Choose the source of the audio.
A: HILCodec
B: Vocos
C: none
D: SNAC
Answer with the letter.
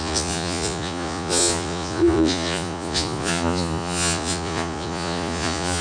B